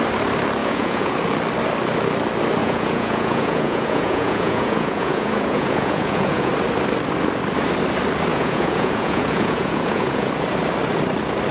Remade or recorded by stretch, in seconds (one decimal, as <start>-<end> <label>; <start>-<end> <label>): 0.0-0.6 recorded; 0.6-1.2 remade; 1.2-2.6 recorded; 2.6-6.5 remade; 6.5-8.3 recorded; 8.3-10.3 remade; 10.3-11.5 recorded